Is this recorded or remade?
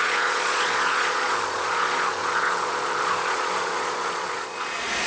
remade